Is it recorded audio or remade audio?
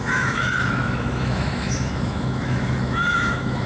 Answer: remade